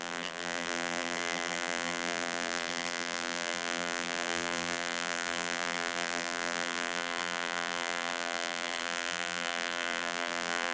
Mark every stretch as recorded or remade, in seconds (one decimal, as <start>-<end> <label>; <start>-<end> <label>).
0.0-10.7 remade